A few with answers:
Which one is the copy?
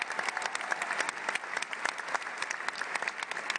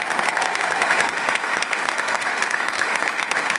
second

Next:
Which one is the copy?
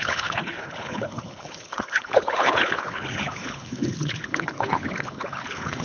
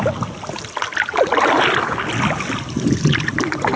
first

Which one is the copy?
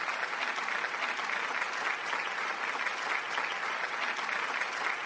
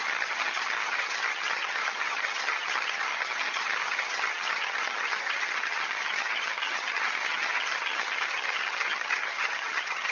second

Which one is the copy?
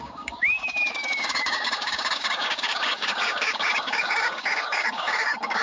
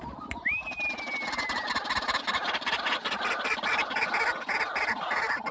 first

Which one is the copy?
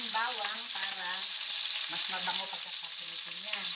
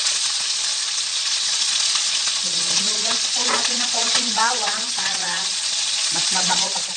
second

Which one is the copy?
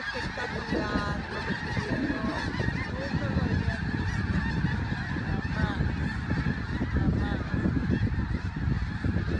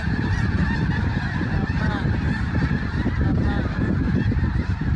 second